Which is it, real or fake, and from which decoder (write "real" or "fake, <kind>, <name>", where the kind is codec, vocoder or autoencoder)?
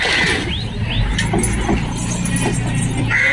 real